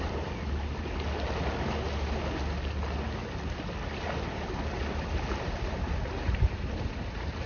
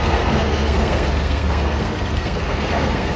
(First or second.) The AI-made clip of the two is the second